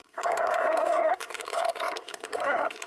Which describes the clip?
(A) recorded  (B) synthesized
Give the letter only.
B